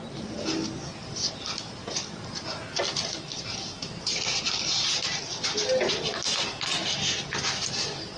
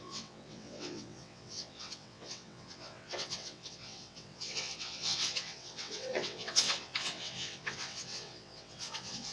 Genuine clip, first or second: first